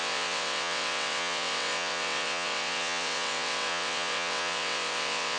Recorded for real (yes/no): no